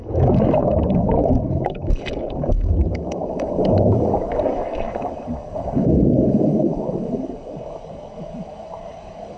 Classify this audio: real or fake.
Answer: fake